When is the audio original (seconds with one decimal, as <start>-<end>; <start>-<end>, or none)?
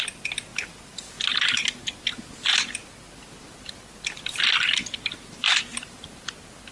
0.0-6.7